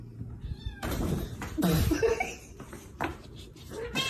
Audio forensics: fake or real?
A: fake